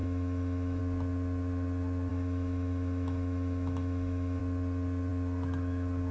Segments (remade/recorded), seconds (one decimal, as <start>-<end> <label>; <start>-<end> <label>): 0.0-0.8 remade; 0.8-2.1 recorded; 2.1-4.4 remade; 4.4-6.1 recorded